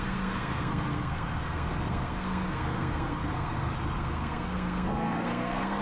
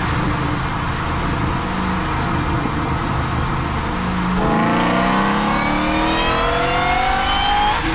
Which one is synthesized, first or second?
first